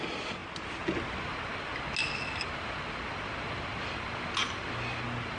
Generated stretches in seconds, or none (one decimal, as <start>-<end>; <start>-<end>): none